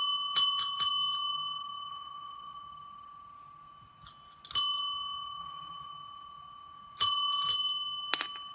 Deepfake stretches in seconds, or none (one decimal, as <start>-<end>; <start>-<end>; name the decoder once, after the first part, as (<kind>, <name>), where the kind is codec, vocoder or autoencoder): 1.9-2.6 (vocoder, Vocos); 5.4-5.9